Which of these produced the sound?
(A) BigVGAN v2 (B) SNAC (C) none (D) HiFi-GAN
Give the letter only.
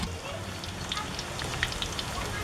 C